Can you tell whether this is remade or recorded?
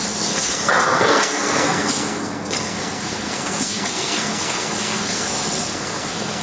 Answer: remade